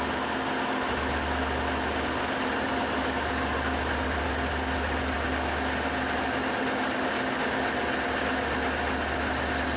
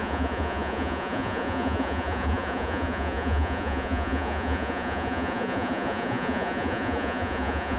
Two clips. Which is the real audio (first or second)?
first